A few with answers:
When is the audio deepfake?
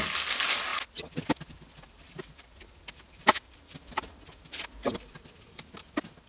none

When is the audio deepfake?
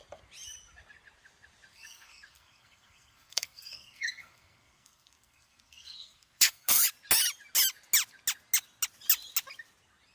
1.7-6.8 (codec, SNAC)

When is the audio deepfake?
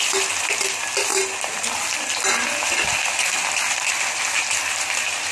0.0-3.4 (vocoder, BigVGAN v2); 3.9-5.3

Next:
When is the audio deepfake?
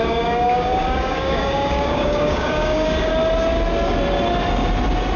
0.0-3.1 (codec, DAC)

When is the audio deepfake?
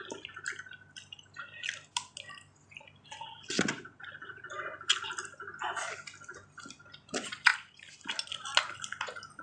none